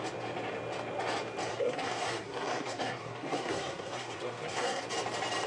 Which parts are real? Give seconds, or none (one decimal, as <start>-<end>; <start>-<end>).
0.0-1.5; 4.8-5.5